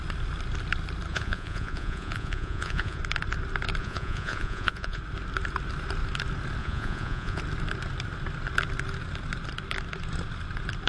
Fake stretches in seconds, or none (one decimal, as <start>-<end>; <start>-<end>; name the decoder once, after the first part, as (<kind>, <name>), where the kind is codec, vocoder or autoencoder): 1.1-3.0 (vocoder, Vocos); 3.8-5.0; 6.6-7.4